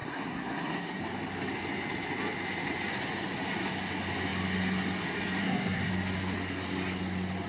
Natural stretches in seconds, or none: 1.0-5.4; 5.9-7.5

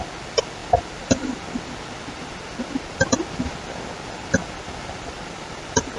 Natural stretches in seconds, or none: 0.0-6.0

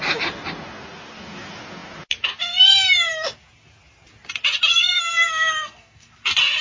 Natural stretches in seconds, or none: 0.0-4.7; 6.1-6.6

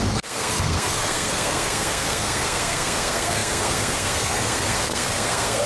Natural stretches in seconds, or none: none

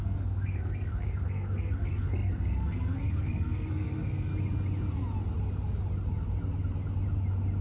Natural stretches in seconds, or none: 4.3-7.6

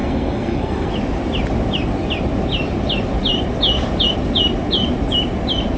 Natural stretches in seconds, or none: 0.9-5.8